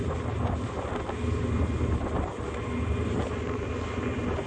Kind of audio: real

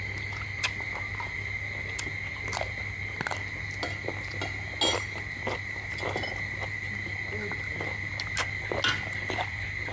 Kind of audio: real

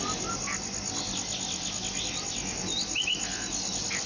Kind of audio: real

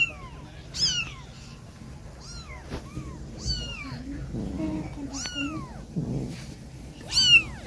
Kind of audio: real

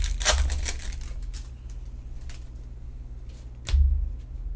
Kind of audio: real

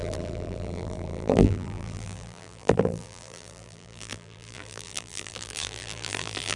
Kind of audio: fake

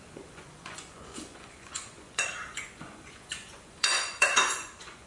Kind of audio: fake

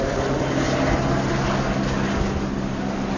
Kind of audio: real